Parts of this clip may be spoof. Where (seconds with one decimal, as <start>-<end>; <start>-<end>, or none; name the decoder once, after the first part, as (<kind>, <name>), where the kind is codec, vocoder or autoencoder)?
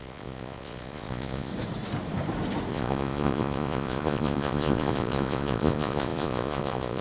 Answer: 0.0-1.5 (vocoder, Vocos); 2.7-7.0